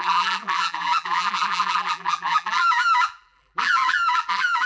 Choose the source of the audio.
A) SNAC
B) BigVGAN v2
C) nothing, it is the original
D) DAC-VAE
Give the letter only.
B